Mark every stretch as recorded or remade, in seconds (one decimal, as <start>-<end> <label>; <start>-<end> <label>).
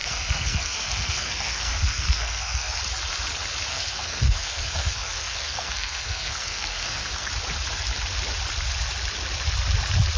0.0-2.8 remade; 2.8-3.7 recorded; 3.7-7.3 remade; 7.3-10.2 recorded